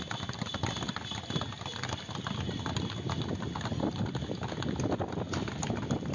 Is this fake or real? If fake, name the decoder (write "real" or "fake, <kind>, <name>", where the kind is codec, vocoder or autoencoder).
real